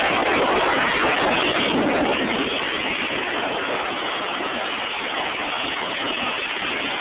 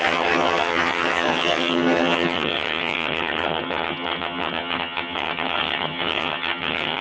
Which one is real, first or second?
first